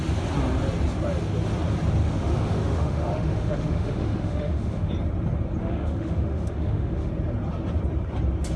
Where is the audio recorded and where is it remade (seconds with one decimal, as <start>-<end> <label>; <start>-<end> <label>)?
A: 0.0-2.0 recorded; 2.0-4.9 remade; 4.9-5.6 recorded; 5.6-7.1 remade; 7.1-8.6 recorded